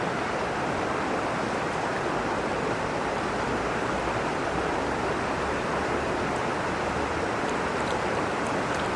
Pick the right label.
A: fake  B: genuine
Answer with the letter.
B